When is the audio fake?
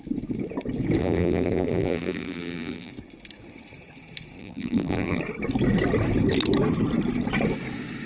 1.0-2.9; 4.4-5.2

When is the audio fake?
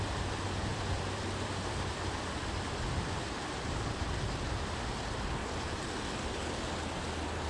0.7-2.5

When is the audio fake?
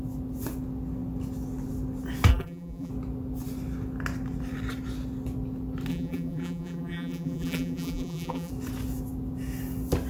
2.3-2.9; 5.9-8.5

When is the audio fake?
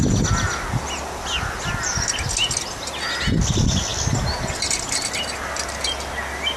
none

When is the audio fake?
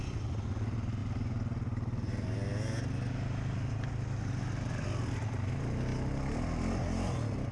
none